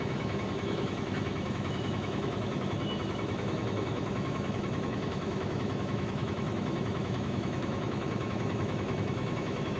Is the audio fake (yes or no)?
yes